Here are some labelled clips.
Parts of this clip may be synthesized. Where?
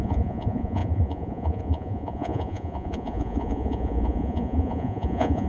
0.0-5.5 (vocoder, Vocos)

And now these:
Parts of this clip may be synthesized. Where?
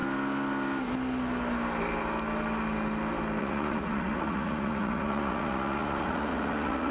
3.4-6.9 (vocoder, Vocos)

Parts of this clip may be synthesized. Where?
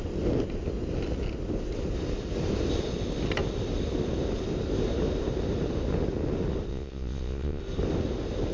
6.7-7.6 (vocoder, Vocos)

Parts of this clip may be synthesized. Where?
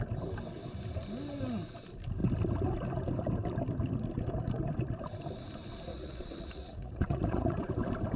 5.9-7.7 (vocoder, Vocos)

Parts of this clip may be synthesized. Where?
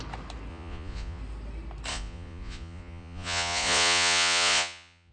0.5-1.2 (vocoder, Vocos); 1.9-5.1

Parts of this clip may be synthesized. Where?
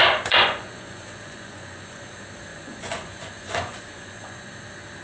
0.0-2.1 (vocoder, Vocos); 2.5-4.5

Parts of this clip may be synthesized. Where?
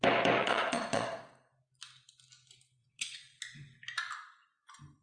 0.4-1.3 (vocoder, Vocos); 2.8-3.4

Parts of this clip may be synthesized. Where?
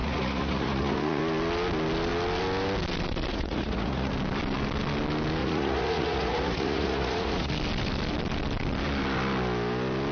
0.0-1.2 (vocoder, Vocos); 3.3-4.1; 5.4-7.5